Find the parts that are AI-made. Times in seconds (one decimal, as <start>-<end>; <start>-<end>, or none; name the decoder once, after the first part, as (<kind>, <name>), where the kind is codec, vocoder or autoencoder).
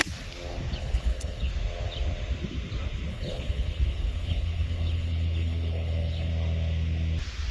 0.8-1.5 (codec, HILCodec); 3.1-6.3